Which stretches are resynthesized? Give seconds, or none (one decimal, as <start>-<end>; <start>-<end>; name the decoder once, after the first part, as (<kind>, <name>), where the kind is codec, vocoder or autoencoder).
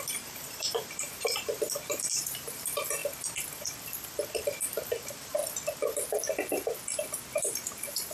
0.0-3.0 (vocoder, BigVGAN v2); 4.9-5.4; 7.4-8.1